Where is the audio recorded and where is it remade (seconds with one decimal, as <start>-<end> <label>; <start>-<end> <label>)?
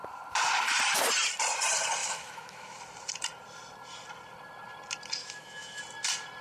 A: 0.0-2.0 recorded; 2.0-2.8 remade; 2.8-5.2 recorded; 5.2-5.8 remade; 5.8-6.4 recorded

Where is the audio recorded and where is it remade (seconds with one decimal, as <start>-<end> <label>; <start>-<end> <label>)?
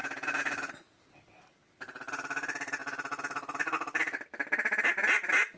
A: 0.0-5.6 recorded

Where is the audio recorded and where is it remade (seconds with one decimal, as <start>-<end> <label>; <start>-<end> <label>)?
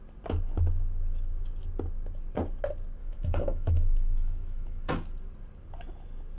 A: 0.0-3.0 recorded; 3.0-4.9 remade; 4.9-6.4 recorded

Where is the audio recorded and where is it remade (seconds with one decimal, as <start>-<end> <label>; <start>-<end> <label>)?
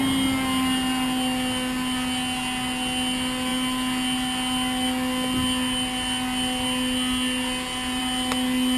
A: 0.0-8.8 recorded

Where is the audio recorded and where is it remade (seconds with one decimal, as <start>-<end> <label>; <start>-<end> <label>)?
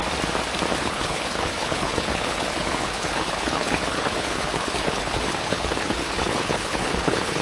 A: 0.0-0.8 recorded; 0.8-7.4 remade